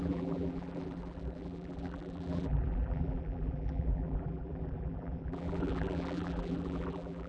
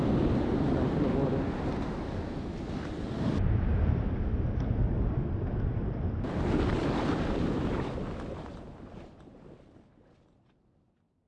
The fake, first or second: first